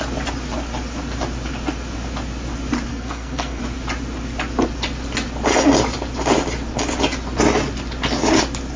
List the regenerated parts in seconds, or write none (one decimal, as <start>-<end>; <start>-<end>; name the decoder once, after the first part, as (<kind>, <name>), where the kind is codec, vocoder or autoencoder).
2.9-3.6 (codec, SNAC)